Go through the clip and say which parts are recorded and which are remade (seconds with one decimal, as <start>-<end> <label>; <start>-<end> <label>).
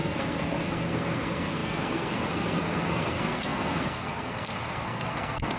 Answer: 0.0-5.6 remade